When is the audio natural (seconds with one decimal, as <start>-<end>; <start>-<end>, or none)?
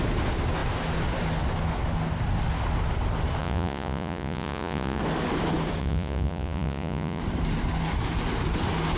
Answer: 0.0-3.4; 5.0-5.8; 7.2-9.0